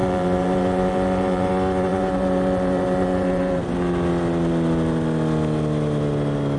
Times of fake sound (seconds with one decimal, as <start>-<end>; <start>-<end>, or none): 0.0-1.5; 1.9-3.6